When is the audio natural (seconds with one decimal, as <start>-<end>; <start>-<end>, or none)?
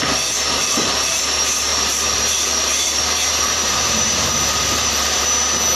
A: 0.0-0.6; 1.2-1.7; 5.2-5.8